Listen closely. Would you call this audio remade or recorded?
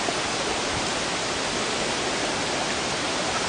recorded